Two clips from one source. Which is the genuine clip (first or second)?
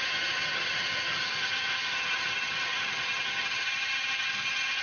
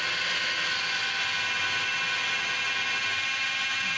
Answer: second